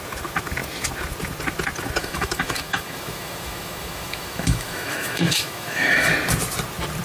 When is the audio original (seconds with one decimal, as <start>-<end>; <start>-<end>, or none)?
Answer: 0.0-2.0; 6.1-7.0